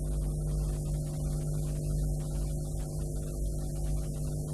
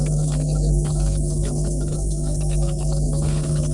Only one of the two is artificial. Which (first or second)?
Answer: second